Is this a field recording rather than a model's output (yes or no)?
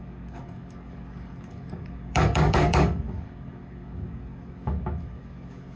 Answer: no